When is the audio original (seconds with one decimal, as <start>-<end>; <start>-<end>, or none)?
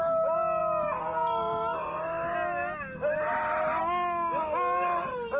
0.0-5.4